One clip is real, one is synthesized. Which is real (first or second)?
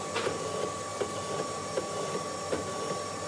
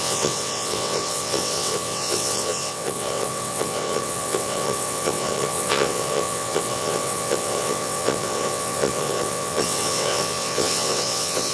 first